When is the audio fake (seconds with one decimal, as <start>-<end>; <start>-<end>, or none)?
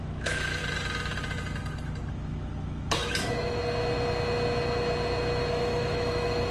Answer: 0.0-0.6; 2.1-3.6; 5.5-6.5